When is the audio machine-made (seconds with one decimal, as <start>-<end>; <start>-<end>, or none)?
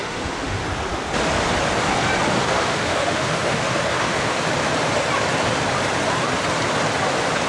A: 0.0-0.6; 2.4-4.4